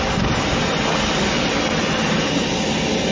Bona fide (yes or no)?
yes